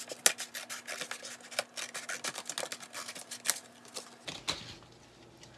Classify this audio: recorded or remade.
recorded